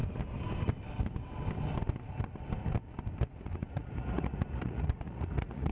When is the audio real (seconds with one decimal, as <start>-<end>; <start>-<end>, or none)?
0.0-3.4